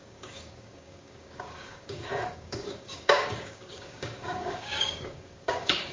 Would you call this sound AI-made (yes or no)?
yes